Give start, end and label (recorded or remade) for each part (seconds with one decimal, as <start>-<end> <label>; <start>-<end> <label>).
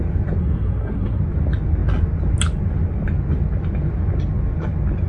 0.0-0.4 recorded; 0.4-1.2 remade; 1.2-5.1 recorded